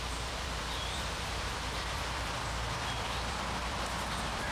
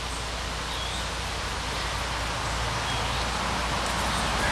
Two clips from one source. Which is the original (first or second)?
second